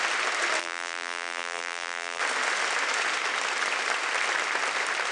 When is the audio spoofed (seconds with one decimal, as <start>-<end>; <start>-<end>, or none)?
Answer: 0.6-2.2